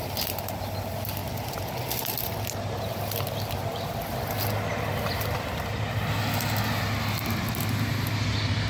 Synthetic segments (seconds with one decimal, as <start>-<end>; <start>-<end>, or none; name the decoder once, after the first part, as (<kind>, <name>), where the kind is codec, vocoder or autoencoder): none